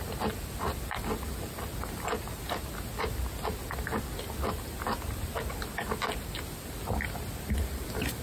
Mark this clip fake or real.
real